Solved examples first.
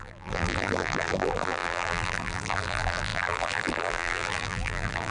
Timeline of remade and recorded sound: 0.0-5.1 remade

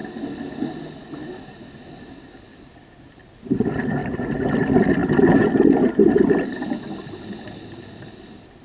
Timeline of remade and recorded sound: 0.0-0.6 remade; 0.6-8.6 recorded